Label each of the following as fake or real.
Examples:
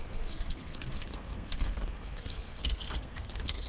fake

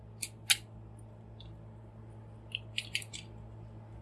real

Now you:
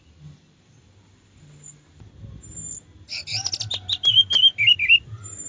real